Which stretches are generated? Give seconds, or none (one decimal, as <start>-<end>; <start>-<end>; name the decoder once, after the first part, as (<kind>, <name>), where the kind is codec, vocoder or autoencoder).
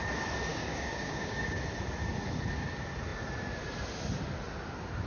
0.5-1.6 (codec, DAC)